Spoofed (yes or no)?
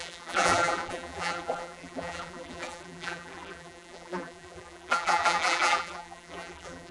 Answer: yes